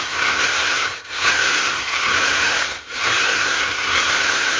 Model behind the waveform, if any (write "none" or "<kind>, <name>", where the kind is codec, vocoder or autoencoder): codec, SNAC